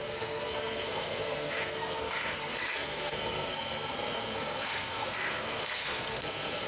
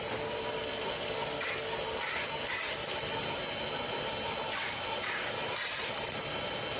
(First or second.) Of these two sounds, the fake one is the first